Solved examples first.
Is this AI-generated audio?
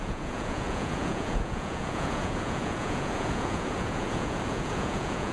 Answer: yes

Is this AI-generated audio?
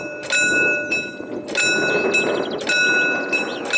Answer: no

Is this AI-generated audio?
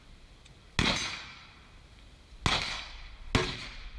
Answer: no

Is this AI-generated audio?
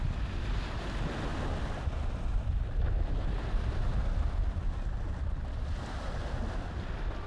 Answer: no